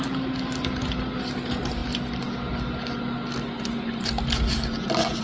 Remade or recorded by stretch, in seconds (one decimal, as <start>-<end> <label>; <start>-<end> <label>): 0.0-5.2 recorded